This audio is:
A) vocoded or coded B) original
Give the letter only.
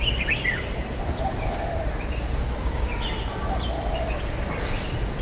B